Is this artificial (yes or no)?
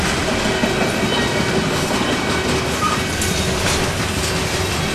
no